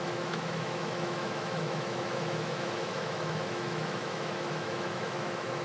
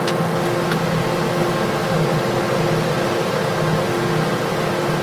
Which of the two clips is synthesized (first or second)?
first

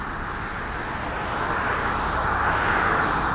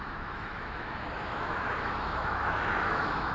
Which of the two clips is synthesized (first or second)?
second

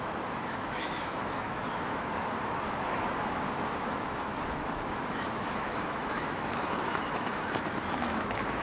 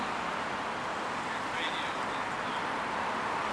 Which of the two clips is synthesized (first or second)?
first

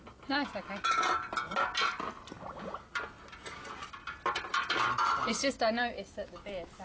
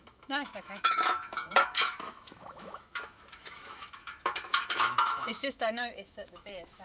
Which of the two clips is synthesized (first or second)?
second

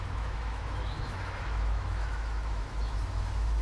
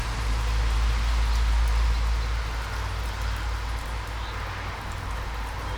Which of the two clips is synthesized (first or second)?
first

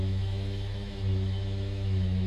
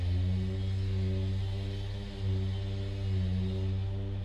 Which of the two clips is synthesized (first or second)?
first